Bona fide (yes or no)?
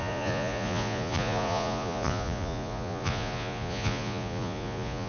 no